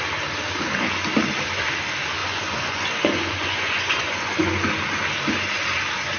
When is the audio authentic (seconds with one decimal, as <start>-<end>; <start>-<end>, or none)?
0.0-2.2; 4.4-6.2